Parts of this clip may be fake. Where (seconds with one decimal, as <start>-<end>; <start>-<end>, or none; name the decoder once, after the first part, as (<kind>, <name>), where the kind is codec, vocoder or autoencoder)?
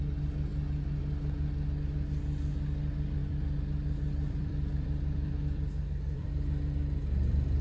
3.2-7.6 (vocoder, BigVGAN v2)